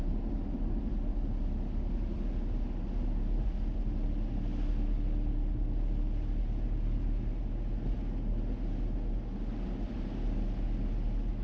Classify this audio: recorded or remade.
recorded